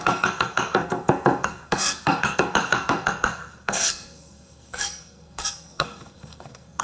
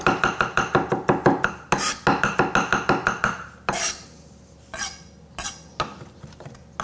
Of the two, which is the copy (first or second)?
first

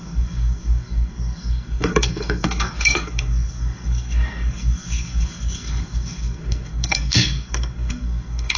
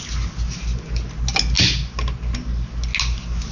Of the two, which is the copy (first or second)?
first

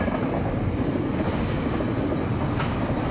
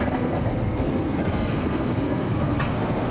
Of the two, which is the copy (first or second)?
second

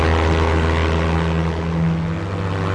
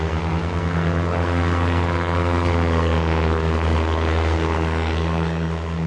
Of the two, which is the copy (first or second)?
second